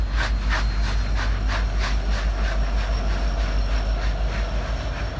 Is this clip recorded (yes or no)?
yes